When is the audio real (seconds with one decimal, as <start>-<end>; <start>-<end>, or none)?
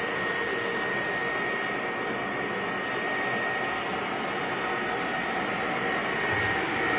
0.0-7.0